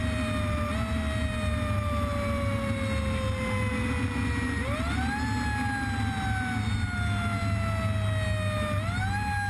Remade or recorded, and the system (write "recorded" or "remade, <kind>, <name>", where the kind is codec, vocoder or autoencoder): recorded